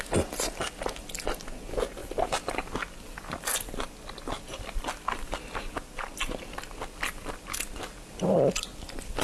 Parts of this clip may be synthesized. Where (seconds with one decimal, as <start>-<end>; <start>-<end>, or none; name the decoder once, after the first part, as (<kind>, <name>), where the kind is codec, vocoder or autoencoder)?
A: none